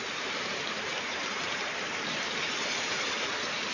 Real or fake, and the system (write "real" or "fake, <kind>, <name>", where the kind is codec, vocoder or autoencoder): fake, vocoder, BigVGAN v2